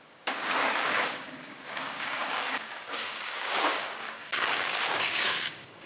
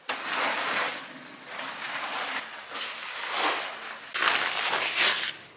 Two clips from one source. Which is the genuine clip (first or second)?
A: second